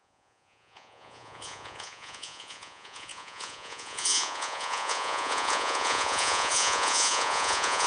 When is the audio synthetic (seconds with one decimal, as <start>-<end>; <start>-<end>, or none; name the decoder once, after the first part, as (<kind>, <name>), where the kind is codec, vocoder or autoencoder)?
0.0-7.9 (vocoder, Vocos)